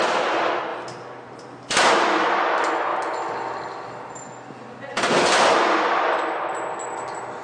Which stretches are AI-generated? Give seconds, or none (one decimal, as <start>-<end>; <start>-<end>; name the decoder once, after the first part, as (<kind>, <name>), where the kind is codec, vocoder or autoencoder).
none